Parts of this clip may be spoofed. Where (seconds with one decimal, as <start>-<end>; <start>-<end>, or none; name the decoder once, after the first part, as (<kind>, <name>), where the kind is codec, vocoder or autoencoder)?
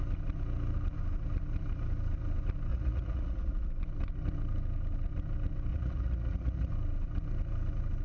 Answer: 2.7-3.7 (vocoder, Vocos); 5.7-6.7